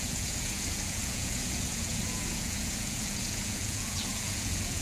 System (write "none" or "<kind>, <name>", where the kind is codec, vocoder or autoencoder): vocoder, Vocos